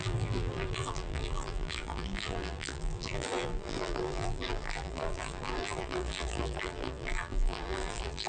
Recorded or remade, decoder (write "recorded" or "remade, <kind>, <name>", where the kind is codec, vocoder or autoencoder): remade, vocoder, BigVGAN v2